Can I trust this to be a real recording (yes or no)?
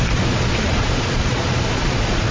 no